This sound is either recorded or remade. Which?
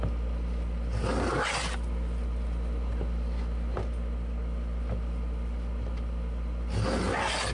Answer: recorded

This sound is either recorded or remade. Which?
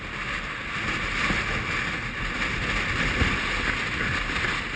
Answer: recorded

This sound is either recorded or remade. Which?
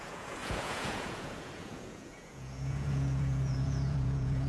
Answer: remade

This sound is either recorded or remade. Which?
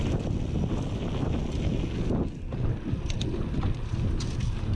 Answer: recorded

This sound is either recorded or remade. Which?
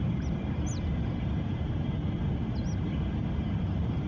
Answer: recorded